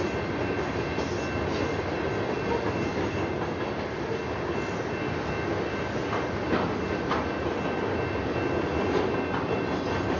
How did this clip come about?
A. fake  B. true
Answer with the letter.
B